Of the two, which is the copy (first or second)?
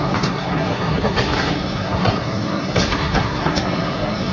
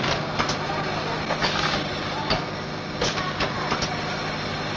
first